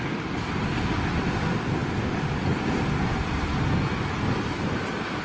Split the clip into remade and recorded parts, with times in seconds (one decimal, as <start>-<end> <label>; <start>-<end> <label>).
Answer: 0.0-5.2 recorded